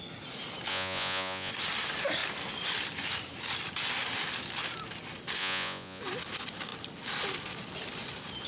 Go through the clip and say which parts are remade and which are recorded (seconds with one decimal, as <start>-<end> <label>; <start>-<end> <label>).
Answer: 0.0-0.7 recorded; 0.7-1.5 remade; 1.5-5.4 recorded; 5.4-6.0 remade; 6.0-8.5 recorded